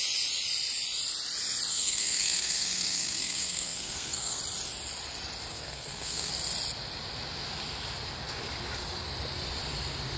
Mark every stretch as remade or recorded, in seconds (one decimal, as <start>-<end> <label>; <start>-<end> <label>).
0.0-1.7 recorded; 1.7-4.4 remade; 4.4-5.5 recorded; 5.5-6.3 remade; 6.3-10.2 recorded